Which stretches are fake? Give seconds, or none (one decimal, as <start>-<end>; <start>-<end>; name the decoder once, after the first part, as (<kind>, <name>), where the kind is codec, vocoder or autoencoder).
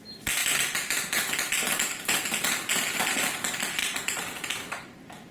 3.8-5.3 (vocoder, BigVGAN v2)